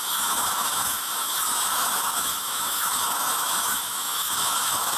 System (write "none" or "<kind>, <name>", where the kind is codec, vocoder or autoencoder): autoencoder, DAC-VAE